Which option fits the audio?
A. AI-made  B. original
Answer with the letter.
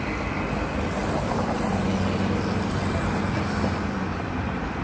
B